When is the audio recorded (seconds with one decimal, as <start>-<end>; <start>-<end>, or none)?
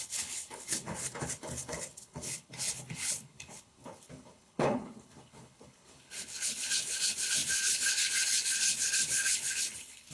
none